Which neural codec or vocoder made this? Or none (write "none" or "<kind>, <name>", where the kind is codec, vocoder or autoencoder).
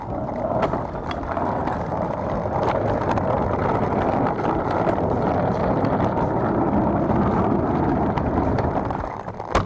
none